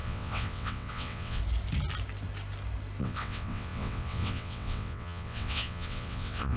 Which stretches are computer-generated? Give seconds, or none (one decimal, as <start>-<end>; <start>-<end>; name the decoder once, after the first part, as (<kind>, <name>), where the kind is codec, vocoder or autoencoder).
0.0-1.4 (vocoder, WaveNeXt); 3.0-6.6